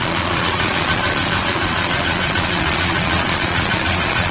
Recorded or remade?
remade